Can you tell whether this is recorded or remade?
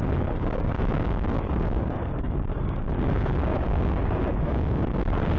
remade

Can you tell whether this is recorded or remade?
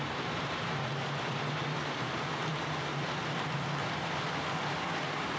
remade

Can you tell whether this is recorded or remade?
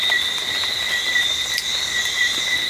recorded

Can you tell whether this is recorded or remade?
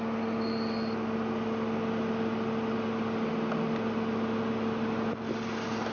recorded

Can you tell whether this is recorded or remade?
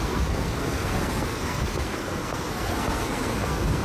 remade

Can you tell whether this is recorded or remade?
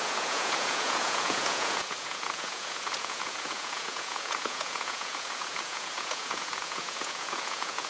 remade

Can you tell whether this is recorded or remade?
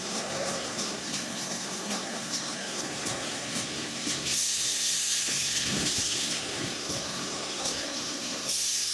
remade